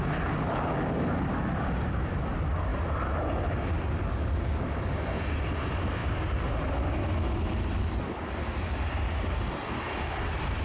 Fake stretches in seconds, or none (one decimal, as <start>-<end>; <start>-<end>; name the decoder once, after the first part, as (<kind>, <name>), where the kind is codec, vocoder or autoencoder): none